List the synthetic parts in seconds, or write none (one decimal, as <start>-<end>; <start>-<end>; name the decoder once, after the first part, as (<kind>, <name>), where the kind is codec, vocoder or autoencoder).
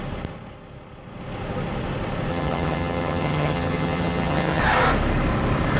2.3-4.6 (vocoder, HiFi-GAN)